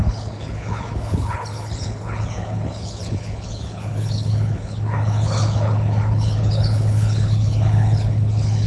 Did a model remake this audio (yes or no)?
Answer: yes